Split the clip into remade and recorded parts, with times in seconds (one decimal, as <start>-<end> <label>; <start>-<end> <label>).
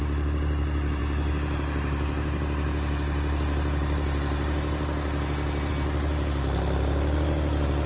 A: 0.0-7.9 recorded